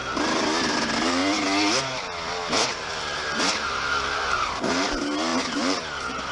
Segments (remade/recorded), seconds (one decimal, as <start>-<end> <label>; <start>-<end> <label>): 0.0-1.2 remade; 1.2-2.5 recorded; 2.5-6.3 remade

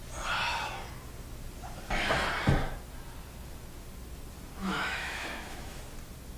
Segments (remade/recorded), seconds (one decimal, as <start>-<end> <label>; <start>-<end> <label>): 0.0-4.6 recorded; 4.6-5.8 remade; 5.8-6.4 recorded

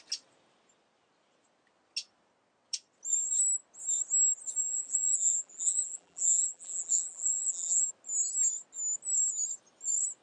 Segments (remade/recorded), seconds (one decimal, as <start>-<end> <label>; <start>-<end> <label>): 0.0-4.6 recorded; 4.6-7.9 remade; 7.9-10.2 recorded

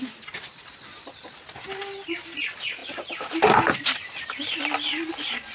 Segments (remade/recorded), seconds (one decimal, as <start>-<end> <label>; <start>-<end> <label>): 0.0-5.5 recorded

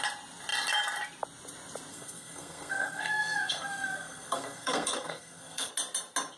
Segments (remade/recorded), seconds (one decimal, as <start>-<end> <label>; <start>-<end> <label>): 0.0-1.9 recorded; 1.9-5.7 remade; 5.7-6.4 recorded

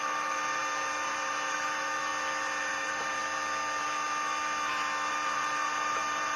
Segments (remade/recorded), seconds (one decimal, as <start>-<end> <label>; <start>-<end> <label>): 0.0-2.1 remade; 2.1-2.6 recorded; 2.6-3.2 remade; 3.2-5.1 recorded; 5.1-6.4 remade